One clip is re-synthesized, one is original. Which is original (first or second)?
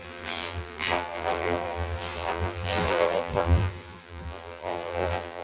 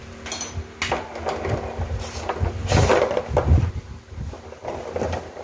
second